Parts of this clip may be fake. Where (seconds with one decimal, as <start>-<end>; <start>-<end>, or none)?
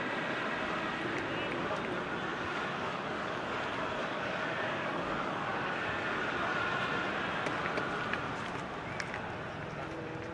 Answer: 2.3-3.6; 4.0-6.6